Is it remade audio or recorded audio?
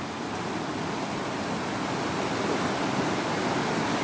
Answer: recorded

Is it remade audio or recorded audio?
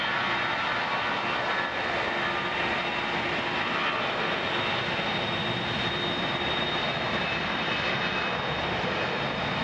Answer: recorded